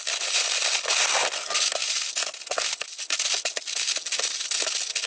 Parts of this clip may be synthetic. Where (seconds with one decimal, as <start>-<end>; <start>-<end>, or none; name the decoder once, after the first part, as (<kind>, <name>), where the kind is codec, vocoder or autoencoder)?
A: none